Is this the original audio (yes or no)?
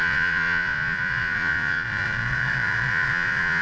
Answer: no